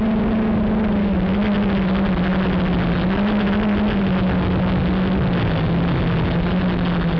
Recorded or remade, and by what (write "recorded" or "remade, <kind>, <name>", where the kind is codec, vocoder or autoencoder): recorded